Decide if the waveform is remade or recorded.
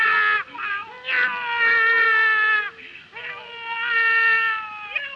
recorded